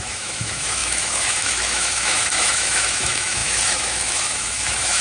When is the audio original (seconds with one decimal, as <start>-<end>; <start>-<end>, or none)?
none